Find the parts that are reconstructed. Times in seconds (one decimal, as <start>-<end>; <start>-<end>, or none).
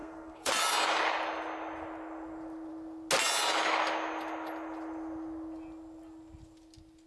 0.0-0.5